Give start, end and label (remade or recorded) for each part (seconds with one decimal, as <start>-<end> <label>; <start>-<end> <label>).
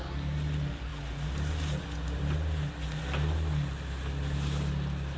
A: 0.0-5.2 recorded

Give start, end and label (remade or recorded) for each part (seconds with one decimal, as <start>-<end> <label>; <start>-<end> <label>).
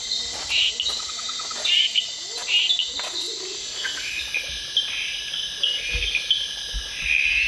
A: 0.0-7.5 recorded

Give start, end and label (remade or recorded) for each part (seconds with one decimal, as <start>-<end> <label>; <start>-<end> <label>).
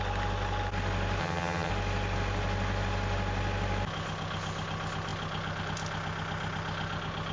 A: 0.0-1.2 recorded; 1.2-1.7 remade; 1.7-7.3 recorded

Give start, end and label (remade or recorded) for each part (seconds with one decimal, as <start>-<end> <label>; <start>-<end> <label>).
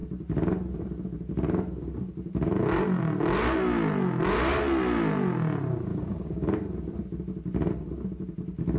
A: 0.0-5.9 recorded; 5.9-6.5 remade; 6.5-8.8 recorded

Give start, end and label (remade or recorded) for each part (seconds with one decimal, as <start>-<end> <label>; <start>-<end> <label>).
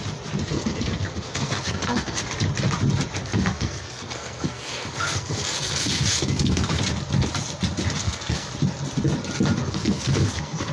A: 0.0-0.5 recorded; 0.5-2.2 remade; 2.2-3.2 recorded; 3.2-6.8 remade; 6.8-8.0 recorded; 8.0-8.5 remade; 8.5-9.6 recorded; 9.6-10.7 remade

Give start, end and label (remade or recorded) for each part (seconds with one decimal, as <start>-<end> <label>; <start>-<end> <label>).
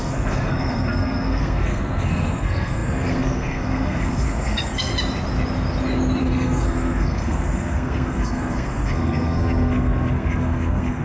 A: 0.0-4.9 remade; 4.9-6.2 recorded; 6.2-11.0 remade